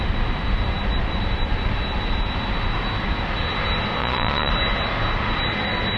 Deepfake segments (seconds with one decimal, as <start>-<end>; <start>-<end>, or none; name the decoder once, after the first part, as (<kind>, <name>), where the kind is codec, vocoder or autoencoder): 4.0-4.5 (vocoder, Vocos)

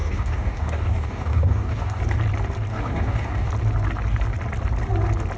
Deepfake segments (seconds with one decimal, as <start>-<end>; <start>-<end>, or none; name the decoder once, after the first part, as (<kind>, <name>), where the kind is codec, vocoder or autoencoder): 0.0-2.0 (codec, DAC); 2.7-3.5